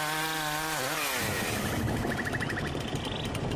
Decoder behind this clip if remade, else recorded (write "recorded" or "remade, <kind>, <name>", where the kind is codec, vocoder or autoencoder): recorded